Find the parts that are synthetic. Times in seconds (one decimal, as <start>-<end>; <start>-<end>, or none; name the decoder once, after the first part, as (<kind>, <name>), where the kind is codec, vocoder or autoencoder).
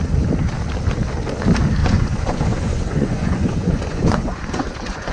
1.8-5.1 (vocoder, Vocos)